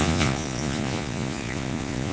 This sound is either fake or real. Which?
fake